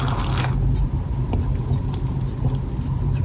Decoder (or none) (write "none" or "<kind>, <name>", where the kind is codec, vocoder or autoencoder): none